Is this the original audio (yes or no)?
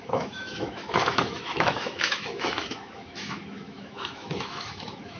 no